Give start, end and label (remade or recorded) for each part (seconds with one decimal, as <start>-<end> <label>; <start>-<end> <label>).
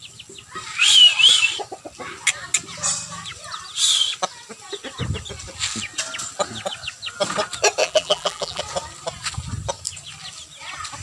0.0-7.8 recorded; 7.8-8.6 remade; 8.6-11.0 recorded